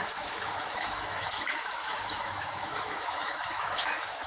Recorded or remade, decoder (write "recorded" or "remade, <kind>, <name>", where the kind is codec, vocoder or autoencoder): remade, autoencoder, DAC-VAE